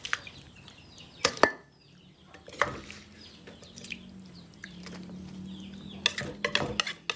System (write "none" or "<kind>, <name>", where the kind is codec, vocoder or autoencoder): none